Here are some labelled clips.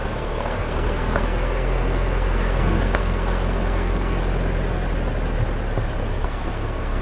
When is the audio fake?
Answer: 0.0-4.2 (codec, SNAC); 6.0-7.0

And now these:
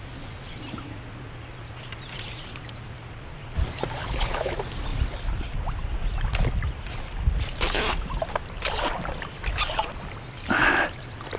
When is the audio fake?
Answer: 4.0-4.5 (codec, HILCodec)

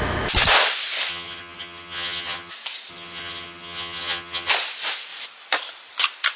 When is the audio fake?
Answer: 1.1-2.5 (vocoder, HiFi-GAN); 2.9-4.5

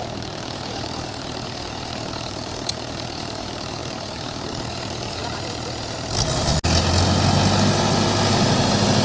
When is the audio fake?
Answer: 0.0-5.2 (codec, DAC)

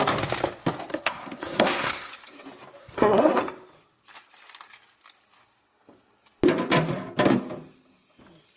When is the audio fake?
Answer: 0.9-2.1 (codec, SNAC); 2.8-3.4